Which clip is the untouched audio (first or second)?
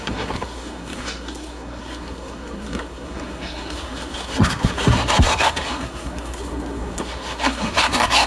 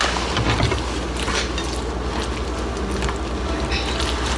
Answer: second